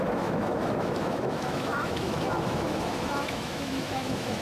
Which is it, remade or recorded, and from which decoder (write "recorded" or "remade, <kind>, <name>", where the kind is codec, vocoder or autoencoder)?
remade, autoencoder, DAC-VAE